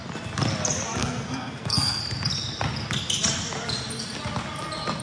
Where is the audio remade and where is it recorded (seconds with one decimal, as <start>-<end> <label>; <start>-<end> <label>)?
0.0-1.0 recorded; 1.0-2.0 remade; 2.0-5.0 recorded